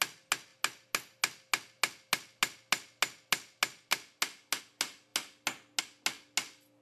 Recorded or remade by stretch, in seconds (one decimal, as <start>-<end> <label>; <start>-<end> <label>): 0.0-6.8 recorded